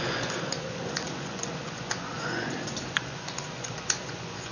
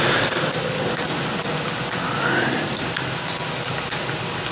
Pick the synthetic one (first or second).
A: first